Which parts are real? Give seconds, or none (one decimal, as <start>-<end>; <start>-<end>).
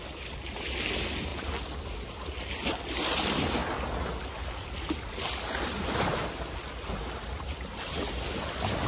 0.0-8.9